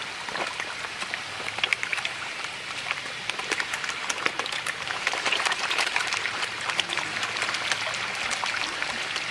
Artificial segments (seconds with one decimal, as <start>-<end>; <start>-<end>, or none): 1.7-2.4; 3.2-7.3